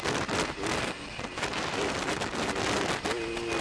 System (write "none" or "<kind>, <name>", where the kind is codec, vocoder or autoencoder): none